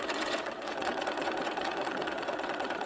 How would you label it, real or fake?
fake